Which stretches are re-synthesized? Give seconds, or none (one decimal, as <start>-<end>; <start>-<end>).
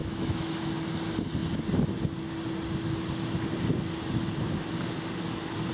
0.0-0.7